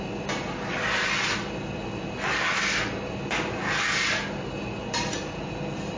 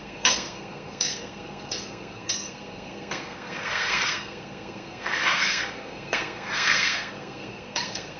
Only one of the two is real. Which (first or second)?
first